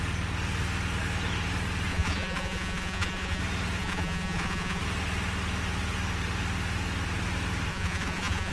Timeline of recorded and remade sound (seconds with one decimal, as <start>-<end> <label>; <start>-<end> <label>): 0.0-1.9 recorded; 1.9-3.4 remade; 3.4-3.8 recorded; 3.8-4.8 remade; 4.8-7.7 recorded; 7.7-8.5 remade